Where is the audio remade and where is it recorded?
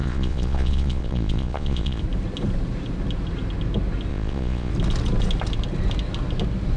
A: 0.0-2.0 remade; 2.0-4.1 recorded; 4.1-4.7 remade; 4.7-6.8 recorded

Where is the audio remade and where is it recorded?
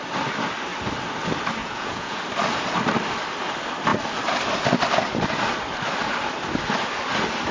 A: 0.0-1.6 recorded; 1.6-2.2 remade; 2.2-7.5 recorded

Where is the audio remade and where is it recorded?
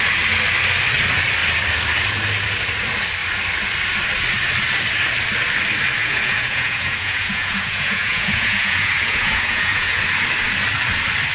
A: 0.0-6.0 recorded; 6.0-10.0 remade; 10.0-11.3 recorded